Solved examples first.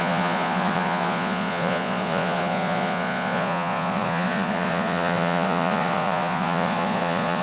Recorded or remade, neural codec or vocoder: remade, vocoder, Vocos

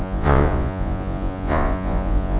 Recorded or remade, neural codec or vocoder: remade, vocoder, Vocos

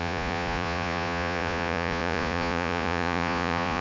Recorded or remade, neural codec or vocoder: remade, vocoder, Vocos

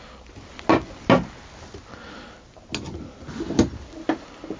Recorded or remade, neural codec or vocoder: recorded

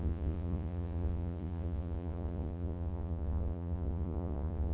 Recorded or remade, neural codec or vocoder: remade, vocoder, Vocos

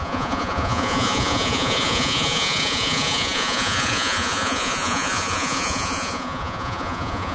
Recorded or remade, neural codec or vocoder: remade, vocoder, Vocos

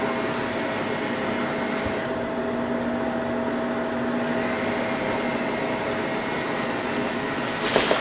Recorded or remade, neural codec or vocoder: recorded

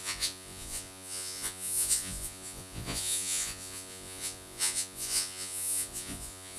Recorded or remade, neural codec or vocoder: remade, vocoder, Vocos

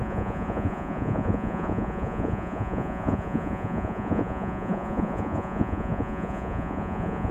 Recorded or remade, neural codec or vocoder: remade, vocoder, Vocos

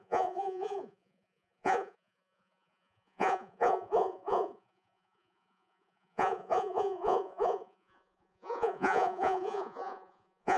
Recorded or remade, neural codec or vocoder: remade, vocoder, Vocos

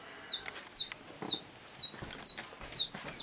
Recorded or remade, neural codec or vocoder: recorded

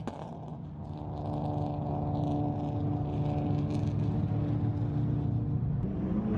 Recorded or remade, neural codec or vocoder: recorded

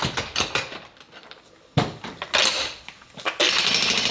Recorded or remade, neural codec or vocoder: recorded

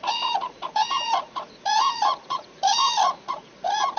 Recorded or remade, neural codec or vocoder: remade, vocoder, Vocos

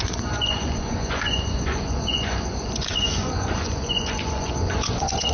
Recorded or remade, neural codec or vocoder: remade, vocoder, Vocos